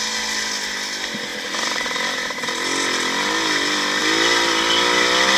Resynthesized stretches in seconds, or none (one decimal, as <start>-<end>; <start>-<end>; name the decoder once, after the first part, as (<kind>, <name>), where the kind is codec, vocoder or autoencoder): none